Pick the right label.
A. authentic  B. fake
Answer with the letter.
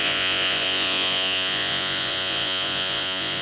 B